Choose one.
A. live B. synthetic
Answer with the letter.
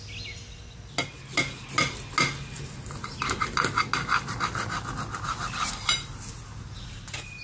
A